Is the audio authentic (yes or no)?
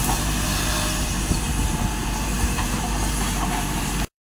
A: no